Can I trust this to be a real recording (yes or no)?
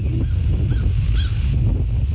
yes